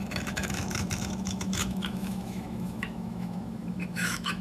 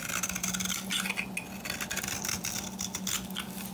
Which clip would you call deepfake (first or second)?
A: first